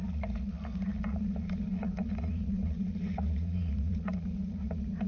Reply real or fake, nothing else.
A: fake